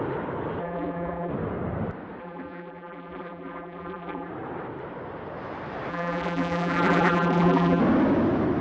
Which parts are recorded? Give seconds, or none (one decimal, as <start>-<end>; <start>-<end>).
0.0-0.6; 1.3-2.2; 4.3-5.9; 7.8-8.6